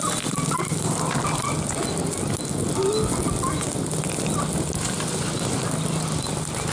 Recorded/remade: recorded